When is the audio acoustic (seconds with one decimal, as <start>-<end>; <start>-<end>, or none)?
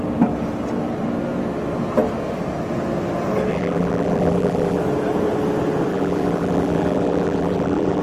0.0-3.5; 4.8-5.9